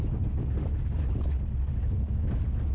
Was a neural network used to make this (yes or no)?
no